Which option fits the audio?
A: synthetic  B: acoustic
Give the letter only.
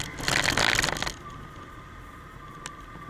B